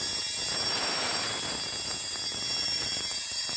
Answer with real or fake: fake